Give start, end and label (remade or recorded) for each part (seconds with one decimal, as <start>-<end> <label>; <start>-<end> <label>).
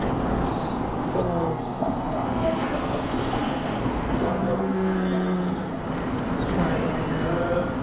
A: 0.0-1.1 recorded; 1.1-5.8 remade; 5.8-7.8 recorded